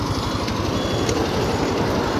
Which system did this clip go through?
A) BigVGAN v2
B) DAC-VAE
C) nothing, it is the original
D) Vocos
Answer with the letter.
C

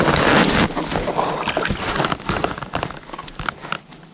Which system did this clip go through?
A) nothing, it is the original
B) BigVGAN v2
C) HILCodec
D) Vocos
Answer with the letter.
A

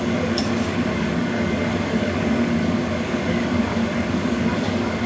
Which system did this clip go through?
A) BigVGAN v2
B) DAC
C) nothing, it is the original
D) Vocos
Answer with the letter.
B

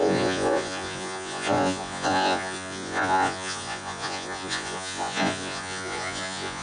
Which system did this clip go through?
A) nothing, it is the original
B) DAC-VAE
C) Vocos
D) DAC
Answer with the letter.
C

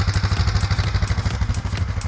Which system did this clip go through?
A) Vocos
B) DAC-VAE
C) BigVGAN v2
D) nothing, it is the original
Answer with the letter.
D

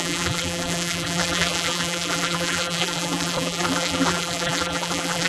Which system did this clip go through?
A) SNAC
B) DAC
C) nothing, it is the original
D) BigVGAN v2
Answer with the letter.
D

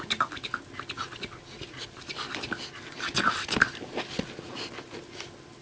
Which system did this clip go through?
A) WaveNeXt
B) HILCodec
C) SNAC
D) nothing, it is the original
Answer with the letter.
D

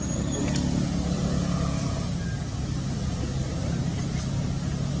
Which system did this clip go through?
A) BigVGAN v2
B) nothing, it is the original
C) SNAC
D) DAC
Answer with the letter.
B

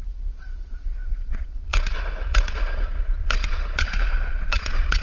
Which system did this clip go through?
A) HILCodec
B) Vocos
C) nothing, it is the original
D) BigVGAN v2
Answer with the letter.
B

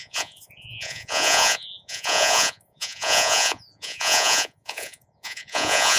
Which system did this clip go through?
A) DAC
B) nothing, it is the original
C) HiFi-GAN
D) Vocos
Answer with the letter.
D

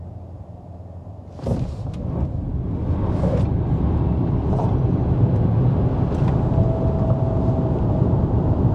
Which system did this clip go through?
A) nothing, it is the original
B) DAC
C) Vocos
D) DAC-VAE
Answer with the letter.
A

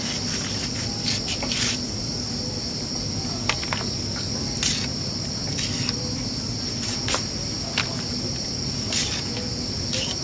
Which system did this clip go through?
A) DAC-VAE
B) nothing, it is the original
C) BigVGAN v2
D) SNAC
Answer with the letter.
B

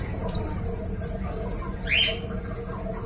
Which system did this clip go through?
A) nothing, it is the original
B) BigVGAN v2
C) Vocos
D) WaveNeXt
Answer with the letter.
A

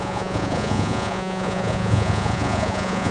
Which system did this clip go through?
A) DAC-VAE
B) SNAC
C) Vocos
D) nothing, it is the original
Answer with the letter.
C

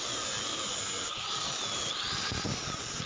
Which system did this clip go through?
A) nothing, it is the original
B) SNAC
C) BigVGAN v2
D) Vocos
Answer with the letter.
A